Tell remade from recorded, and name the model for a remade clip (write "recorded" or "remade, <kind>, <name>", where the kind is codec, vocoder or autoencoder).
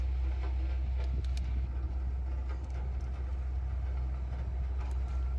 recorded